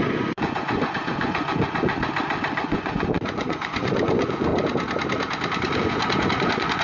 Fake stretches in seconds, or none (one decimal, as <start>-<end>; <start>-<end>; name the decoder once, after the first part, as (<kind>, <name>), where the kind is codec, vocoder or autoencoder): 0.0-1.9 (vocoder, Vocos); 2.5-4.5; 5.8-6.8